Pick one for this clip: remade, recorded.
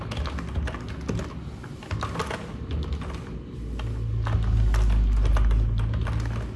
recorded